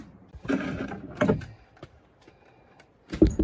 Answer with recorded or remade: recorded